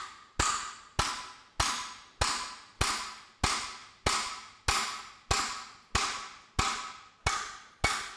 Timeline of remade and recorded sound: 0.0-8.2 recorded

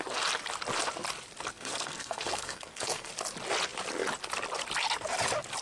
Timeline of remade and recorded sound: 0.0-1.5 recorded; 1.5-3.1 remade; 3.1-5.6 recorded

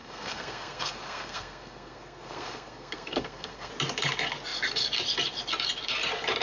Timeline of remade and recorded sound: 0.0-3.7 remade; 3.7-6.4 recorded

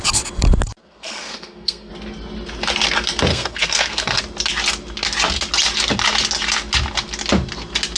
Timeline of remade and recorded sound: 0.0-0.8 recorded; 0.8-1.9 remade; 1.9-3.3 recorded; 3.3-4.2 remade; 4.2-8.0 recorded

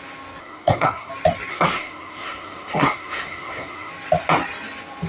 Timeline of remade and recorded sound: 0.0-0.4 recorded; 0.4-1.1 remade; 1.1-1.5 recorded; 1.5-3.9 remade; 3.9-5.1 recorded